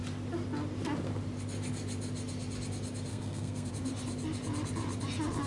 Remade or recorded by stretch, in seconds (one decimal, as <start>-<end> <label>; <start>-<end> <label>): 0.0-3.1 recorded; 3.1-3.7 remade; 3.7-5.5 recorded